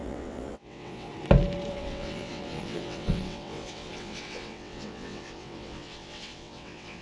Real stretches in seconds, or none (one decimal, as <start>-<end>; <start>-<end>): 1.1-1.7